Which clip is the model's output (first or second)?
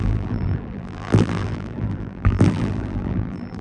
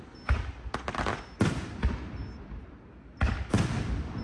first